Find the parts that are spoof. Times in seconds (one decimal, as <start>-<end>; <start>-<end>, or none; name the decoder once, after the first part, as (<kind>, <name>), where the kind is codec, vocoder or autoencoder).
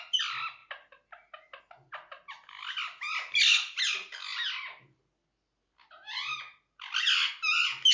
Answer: none